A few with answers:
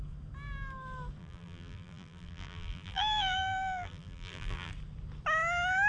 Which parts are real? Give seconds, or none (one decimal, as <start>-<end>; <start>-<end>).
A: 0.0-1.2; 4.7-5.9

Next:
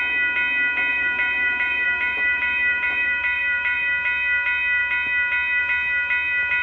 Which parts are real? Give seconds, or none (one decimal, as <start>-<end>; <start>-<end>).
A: 0.0-0.9; 3.9-6.6

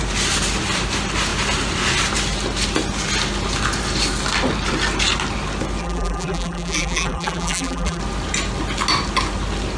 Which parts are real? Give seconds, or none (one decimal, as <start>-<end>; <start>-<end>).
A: 0.0-5.8; 8.0-9.8

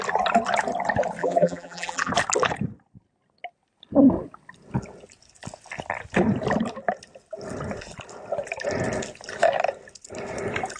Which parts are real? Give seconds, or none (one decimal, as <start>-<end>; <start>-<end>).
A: 0.0-1.2; 2.1-10.8